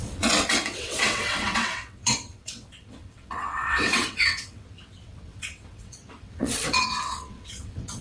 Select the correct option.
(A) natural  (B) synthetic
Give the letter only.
B